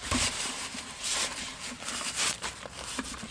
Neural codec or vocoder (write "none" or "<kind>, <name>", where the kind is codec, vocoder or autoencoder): vocoder, BigVGAN v2